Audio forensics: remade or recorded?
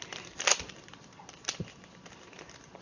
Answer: recorded